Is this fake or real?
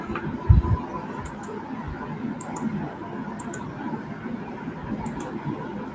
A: real